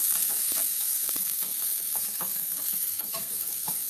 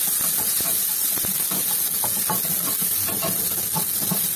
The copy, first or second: first